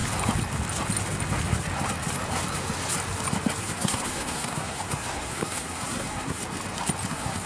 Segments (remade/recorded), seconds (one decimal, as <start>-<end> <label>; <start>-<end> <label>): 0.0-3.6 recorded; 3.6-6.4 remade; 6.4-7.1 recorded; 7.1-7.5 remade